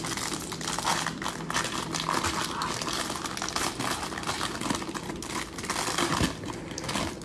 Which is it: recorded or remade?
recorded